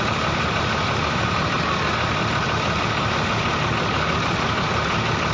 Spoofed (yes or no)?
no